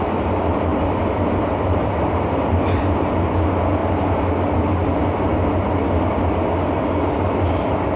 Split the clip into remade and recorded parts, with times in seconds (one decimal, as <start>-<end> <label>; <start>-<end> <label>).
0.0-0.7 recorded; 0.7-2.8 remade; 2.8-8.0 recorded